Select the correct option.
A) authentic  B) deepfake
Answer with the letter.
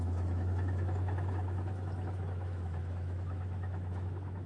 B